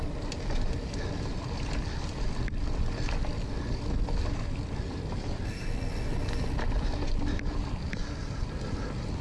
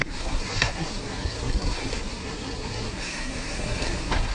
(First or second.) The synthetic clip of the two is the second